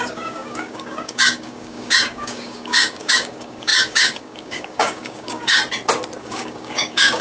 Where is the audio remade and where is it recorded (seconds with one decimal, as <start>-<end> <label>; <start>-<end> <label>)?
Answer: 0.0-5.6 remade; 5.6-6.2 recorded; 6.2-7.2 remade